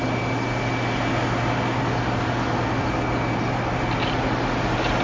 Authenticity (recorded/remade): recorded